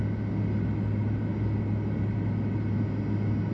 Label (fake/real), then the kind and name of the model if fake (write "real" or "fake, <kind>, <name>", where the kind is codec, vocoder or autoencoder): real